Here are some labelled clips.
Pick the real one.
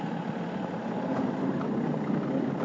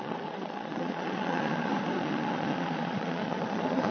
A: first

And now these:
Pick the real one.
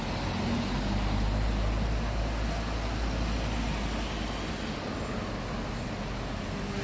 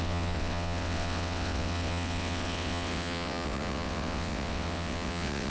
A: first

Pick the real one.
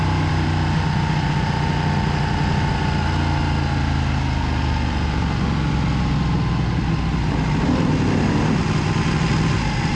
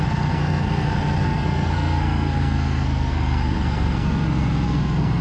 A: first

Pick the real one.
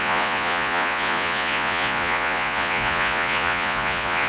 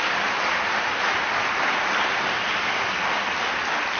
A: second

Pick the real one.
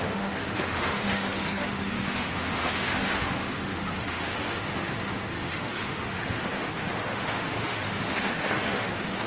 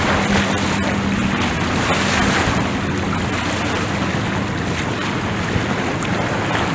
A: second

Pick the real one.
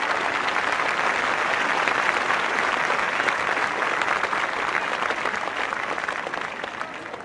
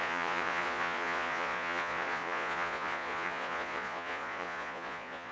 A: first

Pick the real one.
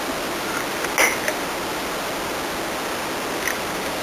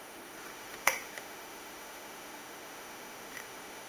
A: first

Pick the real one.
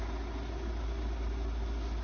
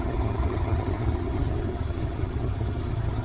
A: first